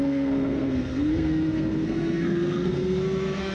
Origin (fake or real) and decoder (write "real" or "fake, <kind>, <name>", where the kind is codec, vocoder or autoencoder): fake, codec, SNAC